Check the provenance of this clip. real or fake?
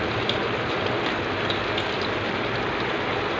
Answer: fake